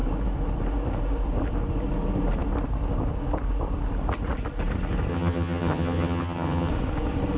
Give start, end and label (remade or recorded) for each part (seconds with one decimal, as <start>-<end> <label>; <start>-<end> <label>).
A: 0.0-5.1 recorded; 5.1-6.7 remade; 6.7-7.4 recorded